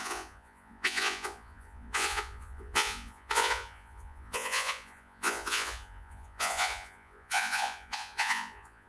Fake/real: fake